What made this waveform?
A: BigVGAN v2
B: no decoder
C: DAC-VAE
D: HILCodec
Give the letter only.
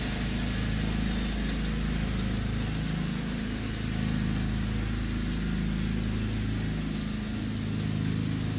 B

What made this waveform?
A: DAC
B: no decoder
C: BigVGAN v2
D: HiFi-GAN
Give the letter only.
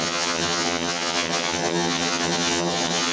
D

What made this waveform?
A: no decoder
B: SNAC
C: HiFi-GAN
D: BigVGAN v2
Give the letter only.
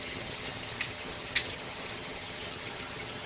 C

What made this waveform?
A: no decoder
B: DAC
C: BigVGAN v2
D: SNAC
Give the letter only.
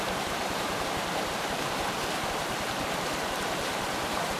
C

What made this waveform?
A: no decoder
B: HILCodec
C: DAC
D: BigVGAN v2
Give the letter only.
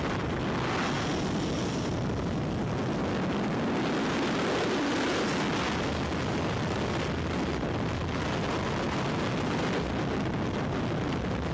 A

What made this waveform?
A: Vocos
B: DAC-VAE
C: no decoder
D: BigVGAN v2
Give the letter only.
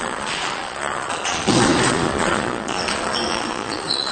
A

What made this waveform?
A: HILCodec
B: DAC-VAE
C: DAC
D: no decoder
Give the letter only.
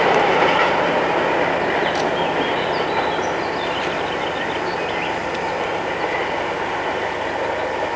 D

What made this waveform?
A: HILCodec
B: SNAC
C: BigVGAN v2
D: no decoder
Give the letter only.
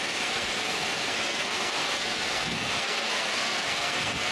B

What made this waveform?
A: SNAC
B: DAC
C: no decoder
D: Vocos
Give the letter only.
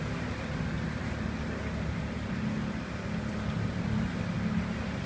C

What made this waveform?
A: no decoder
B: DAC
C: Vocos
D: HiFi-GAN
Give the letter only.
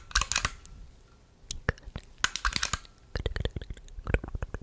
A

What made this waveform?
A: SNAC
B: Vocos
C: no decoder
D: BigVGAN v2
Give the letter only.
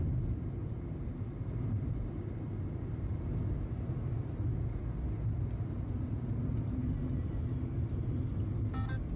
C